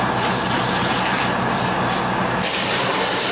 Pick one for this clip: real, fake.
real